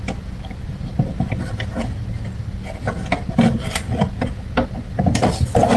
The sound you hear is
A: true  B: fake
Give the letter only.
A